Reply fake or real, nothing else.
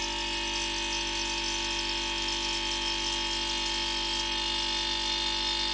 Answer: real